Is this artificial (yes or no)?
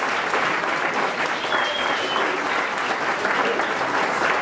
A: no